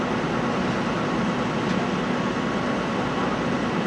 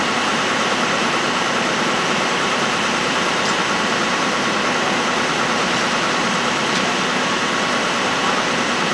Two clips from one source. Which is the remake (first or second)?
second